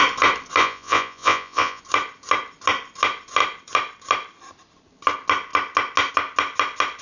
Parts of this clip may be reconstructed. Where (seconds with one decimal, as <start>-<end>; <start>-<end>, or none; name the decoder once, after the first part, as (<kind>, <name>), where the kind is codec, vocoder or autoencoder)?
0.6-1.8 (vocoder, Vocos)